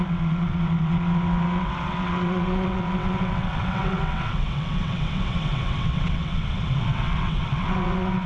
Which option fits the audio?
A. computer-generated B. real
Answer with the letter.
A